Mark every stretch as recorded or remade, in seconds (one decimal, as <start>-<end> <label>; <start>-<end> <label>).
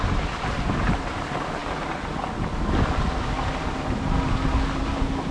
0.0-5.3 recorded